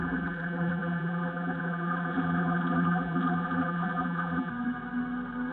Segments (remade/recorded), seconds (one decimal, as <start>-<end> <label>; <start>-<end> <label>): 0.0-4.5 remade; 4.5-5.5 recorded